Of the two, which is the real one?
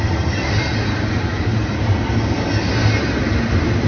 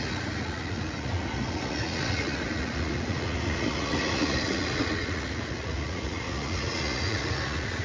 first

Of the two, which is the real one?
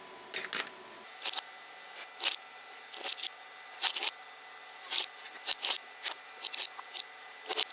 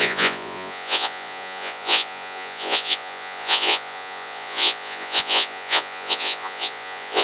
first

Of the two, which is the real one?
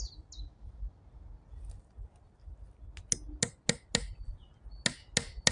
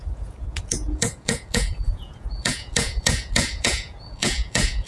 first